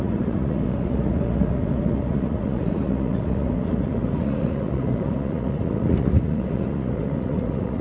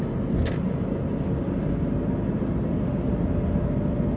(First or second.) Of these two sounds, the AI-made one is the first